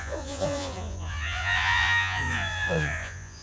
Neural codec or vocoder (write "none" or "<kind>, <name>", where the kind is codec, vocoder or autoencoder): vocoder, Vocos